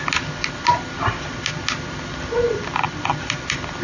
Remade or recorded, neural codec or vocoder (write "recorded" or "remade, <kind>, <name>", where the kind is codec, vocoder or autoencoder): recorded